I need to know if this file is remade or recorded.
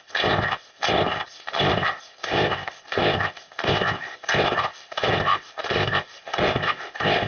remade